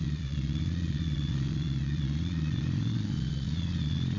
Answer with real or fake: fake